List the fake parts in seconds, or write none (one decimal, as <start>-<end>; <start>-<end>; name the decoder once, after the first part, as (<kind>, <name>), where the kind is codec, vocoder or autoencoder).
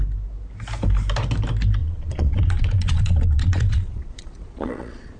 1.8-5.2 (vocoder, Vocos)